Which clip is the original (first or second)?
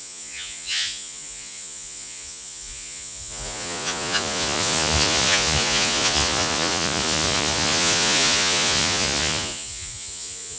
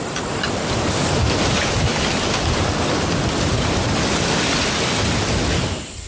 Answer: second